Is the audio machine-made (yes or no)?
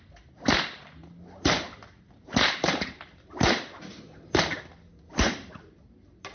no